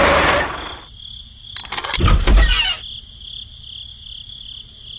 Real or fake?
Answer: real